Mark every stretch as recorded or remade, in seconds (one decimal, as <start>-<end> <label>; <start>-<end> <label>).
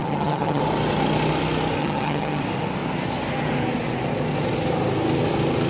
0.0-0.6 remade; 0.6-1.8 recorded; 1.8-2.4 remade; 2.4-5.7 recorded